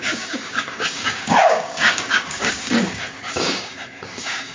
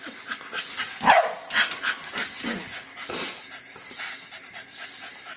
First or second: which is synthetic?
first